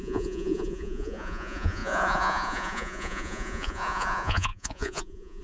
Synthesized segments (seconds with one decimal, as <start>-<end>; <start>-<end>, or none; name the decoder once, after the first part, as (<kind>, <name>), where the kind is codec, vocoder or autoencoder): 0.0-5.4 (vocoder, Vocos)